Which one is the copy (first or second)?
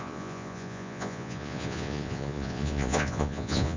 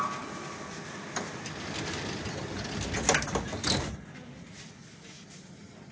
first